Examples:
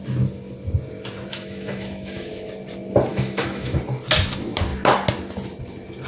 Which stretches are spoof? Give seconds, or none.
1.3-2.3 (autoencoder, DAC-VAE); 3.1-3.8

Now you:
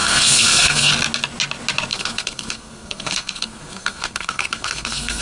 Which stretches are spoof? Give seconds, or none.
0.0-0.9 (codec, SNAC); 1.9-5.2

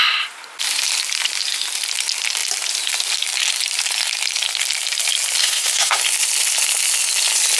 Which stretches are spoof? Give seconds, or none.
5.4-6.0 (codec, SNAC)

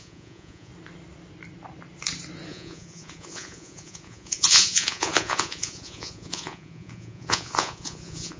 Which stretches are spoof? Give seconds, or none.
0.0-0.7 (vocoder, Vocos); 2.5-8.4

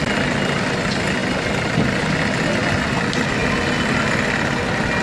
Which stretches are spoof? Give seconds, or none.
none

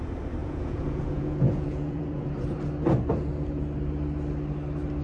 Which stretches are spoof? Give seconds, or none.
0.4-2.3 (vocoder, Vocos)

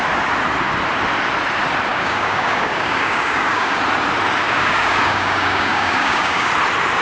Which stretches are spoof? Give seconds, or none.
1.9-3.8 (codec, DAC); 4.4-6.5